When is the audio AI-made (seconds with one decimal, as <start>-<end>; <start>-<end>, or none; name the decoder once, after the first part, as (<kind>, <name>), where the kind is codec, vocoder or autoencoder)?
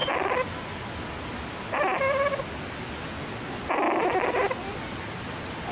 none